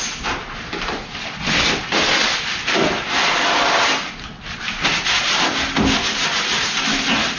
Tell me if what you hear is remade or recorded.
recorded